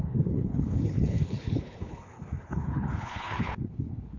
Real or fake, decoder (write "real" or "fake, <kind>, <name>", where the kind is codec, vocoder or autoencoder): fake, codec, HILCodec